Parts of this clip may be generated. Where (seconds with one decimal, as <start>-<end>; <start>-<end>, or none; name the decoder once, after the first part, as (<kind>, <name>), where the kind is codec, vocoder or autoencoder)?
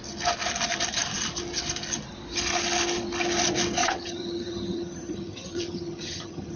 3.8-6.6 (vocoder, HiFi-GAN)